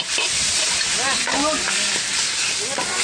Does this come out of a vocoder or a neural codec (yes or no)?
no